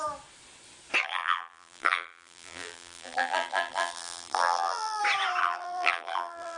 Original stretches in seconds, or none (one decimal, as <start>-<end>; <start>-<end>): 0.0-1.0; 5.0-5.4

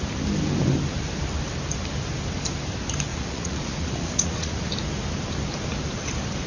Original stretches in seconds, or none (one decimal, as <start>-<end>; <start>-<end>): 0.0-3.1; 4.7-6.5

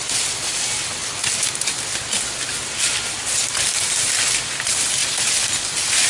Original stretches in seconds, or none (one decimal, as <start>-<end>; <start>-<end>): 0.0-6.1

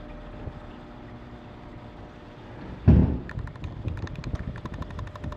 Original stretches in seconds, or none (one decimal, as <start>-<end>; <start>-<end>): 0.0-5.4

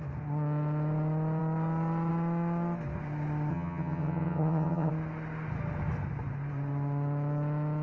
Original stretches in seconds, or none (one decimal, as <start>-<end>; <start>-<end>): 0.0-3.5; 4.9-7.8

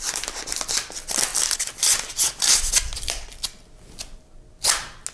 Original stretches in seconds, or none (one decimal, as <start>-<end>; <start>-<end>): 0.0-5.1

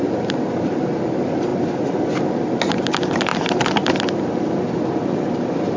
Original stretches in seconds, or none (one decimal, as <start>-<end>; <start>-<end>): 0.0-1.5; 2.1-3.3; 4.8-5.8

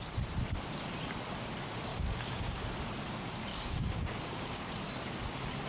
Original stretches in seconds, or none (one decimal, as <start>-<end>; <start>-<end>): 0.0-1.9; 2.6-3.5; 4.7-5.7